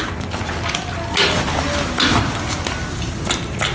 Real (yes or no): yes